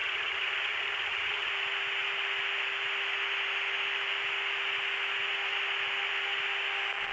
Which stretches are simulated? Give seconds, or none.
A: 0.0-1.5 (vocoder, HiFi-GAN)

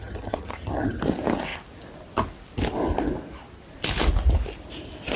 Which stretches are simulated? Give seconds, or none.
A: 0.0-1.0 (vocoder, HiFi-GAN)